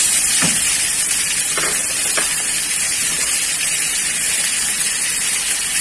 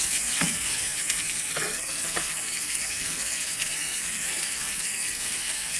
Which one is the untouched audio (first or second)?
first